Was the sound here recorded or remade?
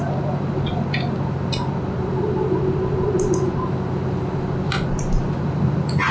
recorded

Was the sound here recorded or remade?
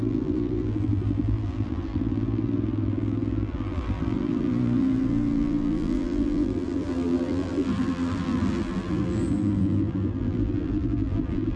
remade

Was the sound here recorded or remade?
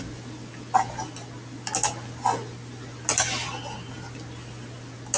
recorded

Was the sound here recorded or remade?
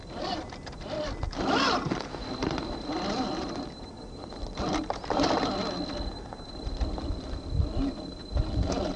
recorded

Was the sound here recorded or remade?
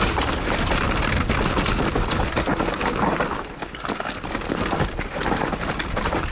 recorded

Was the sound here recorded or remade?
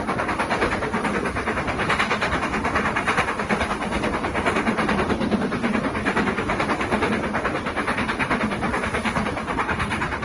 recorded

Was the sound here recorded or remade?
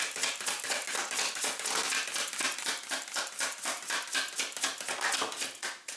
recorded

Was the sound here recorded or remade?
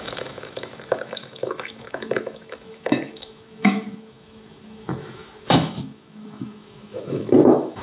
remade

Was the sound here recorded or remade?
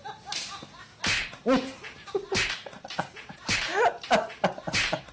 recorded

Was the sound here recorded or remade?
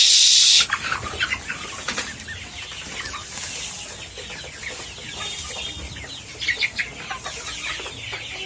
recorded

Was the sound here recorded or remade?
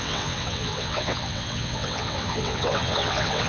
remade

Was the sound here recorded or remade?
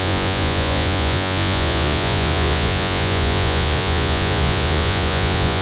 remade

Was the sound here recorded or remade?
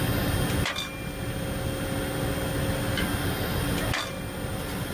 recorded